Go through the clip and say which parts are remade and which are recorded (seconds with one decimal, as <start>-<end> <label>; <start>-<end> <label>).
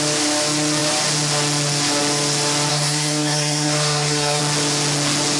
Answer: 0.0-2.7 recorded; 2.7-4.4 remade; 4.4-5.4 recorded